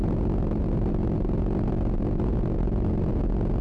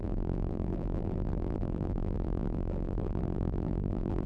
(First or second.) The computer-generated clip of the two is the second